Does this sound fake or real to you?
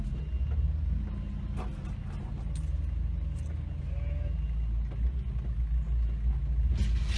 real